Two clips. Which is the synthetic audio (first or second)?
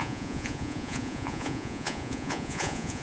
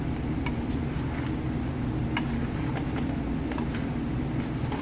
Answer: first